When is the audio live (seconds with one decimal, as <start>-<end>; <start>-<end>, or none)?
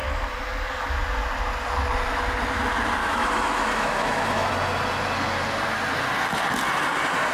0.0-3.0; 4.5-7.3